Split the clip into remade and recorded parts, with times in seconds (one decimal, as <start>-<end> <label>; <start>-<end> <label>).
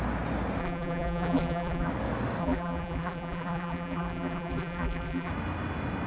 0.0-0.6 recorded; 0.6-1.9 remade; 1.9-2.4 recorded; 2.4-5.3 remade; 5.3-6.1 recorded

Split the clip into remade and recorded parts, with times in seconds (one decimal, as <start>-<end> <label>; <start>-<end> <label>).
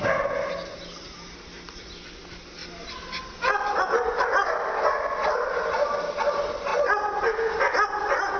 0.0-8.4 recorded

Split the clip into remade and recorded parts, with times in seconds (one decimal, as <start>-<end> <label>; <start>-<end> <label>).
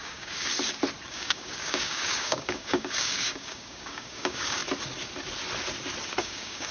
0.0-0.5 remade; 0.5-1.1 recorded; 1.1-4.6 remade; 4.6-6.2 recorded; 6.2-6.7 remade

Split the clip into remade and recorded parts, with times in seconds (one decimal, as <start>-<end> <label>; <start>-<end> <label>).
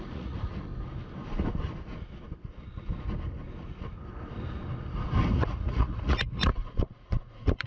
0.0-0.7 remade; 0.7-5.3 recorded; 5.3-7.7 remade